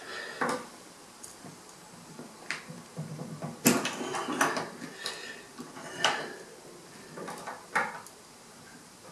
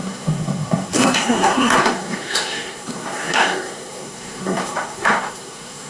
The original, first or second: first